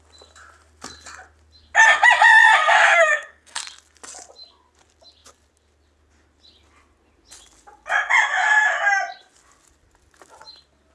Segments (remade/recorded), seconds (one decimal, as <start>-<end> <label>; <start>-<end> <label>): 0.0-2.6 recorded; 2.6-3.6 remade; 3.6-10.9 recorded